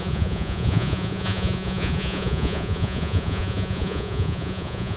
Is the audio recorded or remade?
remade